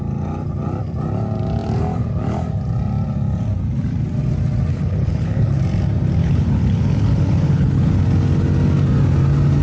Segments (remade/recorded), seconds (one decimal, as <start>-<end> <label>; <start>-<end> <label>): 0.0-4.7 recorded; 4.7-5.6 remade; 5.6-6.2 recorded; 6.2-7.9 remade; 7.9-9.6 recorded